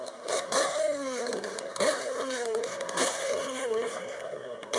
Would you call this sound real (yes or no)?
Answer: no